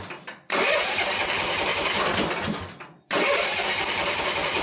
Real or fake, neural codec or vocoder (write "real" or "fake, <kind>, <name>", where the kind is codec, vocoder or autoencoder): real